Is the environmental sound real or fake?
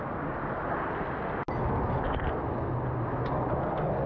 real